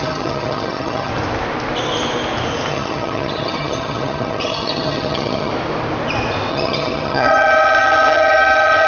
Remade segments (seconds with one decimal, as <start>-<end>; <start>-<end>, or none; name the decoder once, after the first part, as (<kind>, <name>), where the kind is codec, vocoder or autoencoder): 0.0-1.1 (vocoder, HiFi-GAN); 2.7-5.5; 6.5-8.9